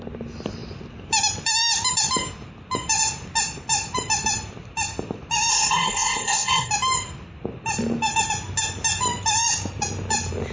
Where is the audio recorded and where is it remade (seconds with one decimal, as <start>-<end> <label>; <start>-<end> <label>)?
0.0-5.5 recorded; 5.5-6.7 remade; 6.7-10.5 recorded